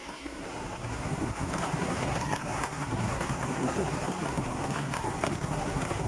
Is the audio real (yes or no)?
no